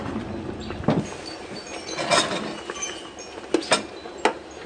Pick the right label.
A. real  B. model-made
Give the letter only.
A